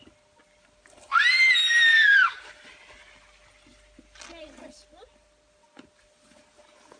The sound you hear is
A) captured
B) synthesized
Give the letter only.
A